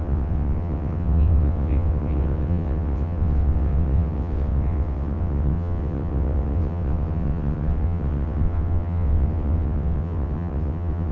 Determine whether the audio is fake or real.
fake